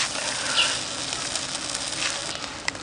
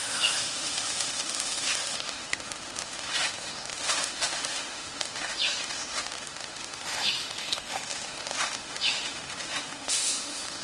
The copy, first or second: second